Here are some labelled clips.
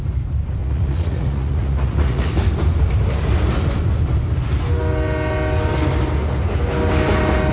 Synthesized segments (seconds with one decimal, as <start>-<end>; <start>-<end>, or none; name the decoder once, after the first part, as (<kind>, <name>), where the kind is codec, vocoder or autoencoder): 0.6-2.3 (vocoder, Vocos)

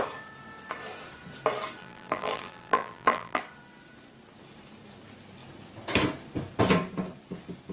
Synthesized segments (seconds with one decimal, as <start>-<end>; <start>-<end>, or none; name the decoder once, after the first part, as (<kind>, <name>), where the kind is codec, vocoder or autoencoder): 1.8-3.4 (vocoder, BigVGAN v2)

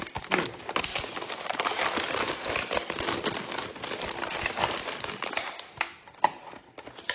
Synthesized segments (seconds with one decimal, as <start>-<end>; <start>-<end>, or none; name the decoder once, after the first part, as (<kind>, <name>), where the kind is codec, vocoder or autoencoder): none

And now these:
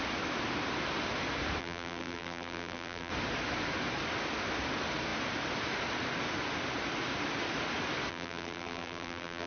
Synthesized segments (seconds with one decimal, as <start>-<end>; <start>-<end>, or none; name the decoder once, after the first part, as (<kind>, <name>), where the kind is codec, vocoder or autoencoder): 1.6-3.1 (vocoder, BigVGAN v2); 8.1-9.5